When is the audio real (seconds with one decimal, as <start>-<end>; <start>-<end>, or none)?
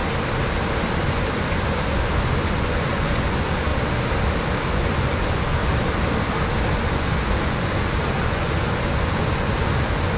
0.0-0.9; 3.7-4.7; 5.6-6.7